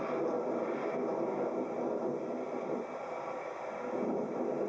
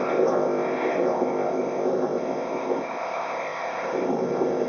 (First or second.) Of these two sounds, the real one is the first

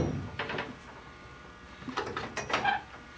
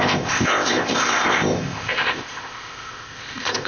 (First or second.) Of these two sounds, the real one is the first